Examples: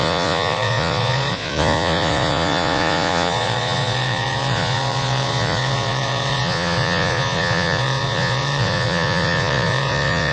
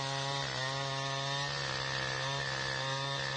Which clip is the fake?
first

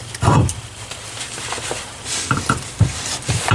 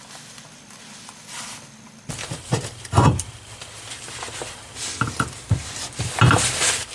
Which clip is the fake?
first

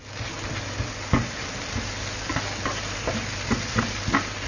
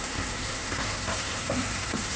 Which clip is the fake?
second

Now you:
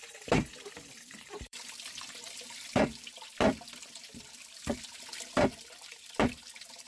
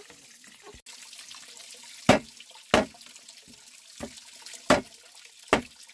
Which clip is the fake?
first